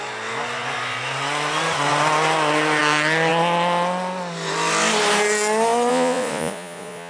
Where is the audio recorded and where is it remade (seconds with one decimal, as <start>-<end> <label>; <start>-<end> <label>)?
0.0-5.9 recorded; 5.9-7.1 remade

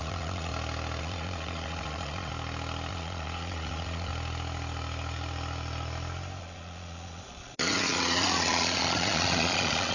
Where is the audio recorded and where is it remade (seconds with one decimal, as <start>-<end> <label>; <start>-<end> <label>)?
0.0-0.5 remade; 0.5-1.0 recorded; 1.0-2.3 remade; 2.3-2.9 recorded; 2.9-4.1 remade; 4.1-6.4 recorded; 6.4-9.9 remade

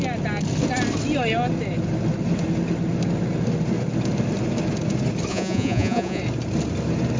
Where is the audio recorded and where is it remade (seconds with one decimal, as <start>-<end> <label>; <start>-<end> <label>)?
0.0-5.3 recorded; 5.3-6.2 remade; 6.2-7.2 recorded

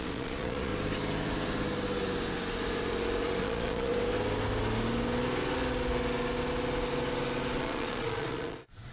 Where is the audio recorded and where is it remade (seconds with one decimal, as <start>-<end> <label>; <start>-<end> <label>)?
0.0-0.7 remade; 0.7-3.4 recorded; 3.4-3.9 remade; 3.9-7.6 recorded; 7.6-8.9 remade

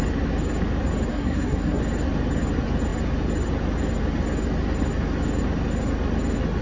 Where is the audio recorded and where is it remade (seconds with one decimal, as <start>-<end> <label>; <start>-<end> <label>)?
0.0-1.1 recorded; 1.1-1.8 remade; 1.8-6.6 recorded